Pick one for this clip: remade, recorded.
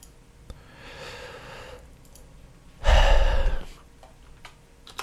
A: recorded